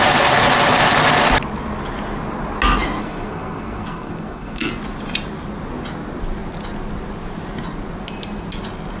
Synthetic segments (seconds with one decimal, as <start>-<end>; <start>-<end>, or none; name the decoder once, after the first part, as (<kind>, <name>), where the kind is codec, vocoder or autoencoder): 3.0-4.7 (codec, SNAC)